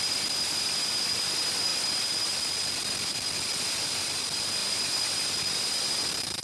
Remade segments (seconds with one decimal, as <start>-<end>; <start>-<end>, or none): none